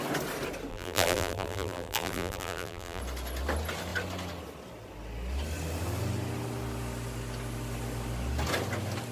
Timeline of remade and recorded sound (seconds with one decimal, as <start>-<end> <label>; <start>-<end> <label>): 0.0-0.7 recorded; 0.7-3.0 remade; 3.0-9.1 recorded